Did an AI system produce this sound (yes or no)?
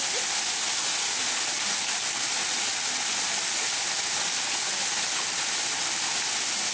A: no